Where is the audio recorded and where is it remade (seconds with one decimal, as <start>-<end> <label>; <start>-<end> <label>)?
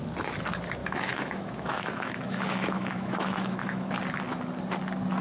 0.0-0.8 recorded; 0.8-3.9 remade; 3.9-5.2 recorded